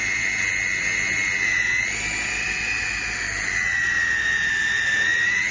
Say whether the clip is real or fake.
real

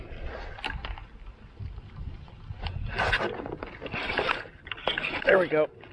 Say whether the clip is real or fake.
real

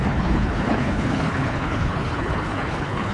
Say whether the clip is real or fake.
fake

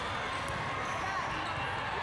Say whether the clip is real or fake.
real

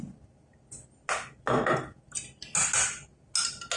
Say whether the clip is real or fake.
real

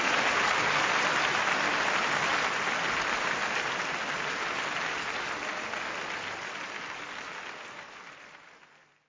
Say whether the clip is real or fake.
fake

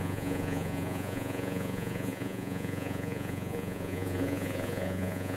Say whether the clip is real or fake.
fake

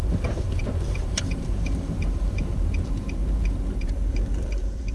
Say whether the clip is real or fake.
fake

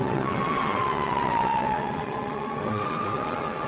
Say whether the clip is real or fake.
fake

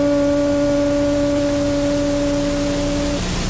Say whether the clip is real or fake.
real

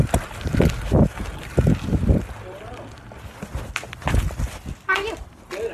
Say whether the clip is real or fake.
real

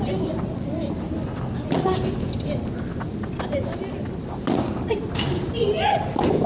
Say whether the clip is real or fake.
real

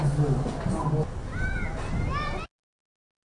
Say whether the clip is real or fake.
real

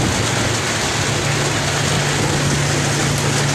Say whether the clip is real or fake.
real